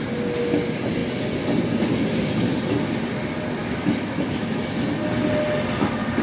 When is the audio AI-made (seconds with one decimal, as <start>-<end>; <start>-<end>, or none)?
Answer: 3.6-4.6